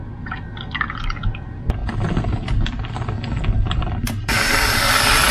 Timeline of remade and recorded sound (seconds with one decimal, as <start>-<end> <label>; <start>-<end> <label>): 0.0-5.3 recorded